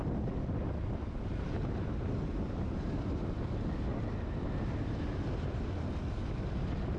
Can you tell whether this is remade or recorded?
recorded